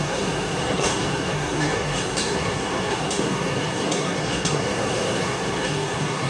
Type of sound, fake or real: fake